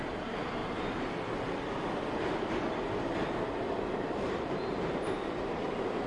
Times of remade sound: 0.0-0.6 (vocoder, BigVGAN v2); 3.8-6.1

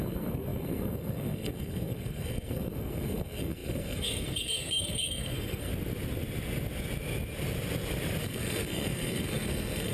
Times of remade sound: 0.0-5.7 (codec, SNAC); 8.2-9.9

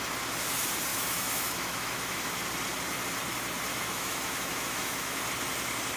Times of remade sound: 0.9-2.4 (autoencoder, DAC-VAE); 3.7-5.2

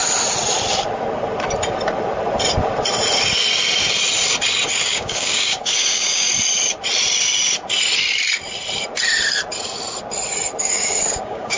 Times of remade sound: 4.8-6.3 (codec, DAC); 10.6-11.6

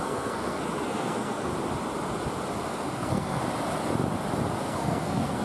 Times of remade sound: 0.0-1.5 (codec, SNAC); 2.7-3.4; 4.6-5.4